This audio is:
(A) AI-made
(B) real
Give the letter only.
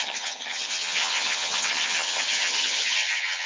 A